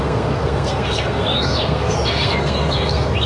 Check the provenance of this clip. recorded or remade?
remade